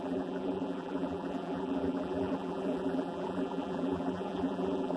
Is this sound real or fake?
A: fake